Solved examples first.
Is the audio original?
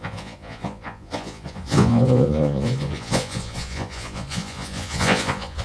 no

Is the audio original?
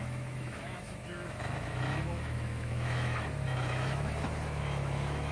no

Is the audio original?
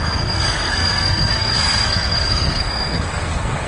no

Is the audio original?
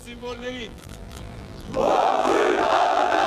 no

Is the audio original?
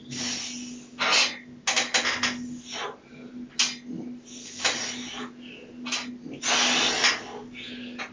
yes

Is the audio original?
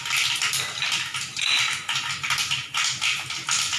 yes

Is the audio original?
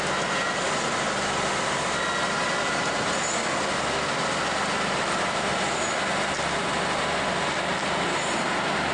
yes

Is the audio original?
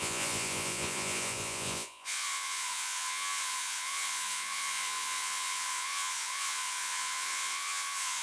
no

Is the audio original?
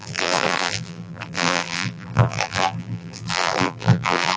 no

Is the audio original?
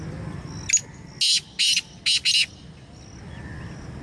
yes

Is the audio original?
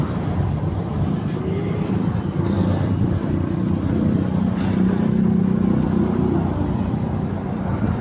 yes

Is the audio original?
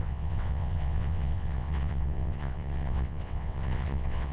no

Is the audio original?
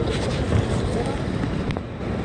yes